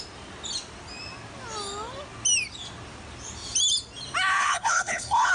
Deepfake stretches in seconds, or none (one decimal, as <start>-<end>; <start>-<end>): 4.4-5.3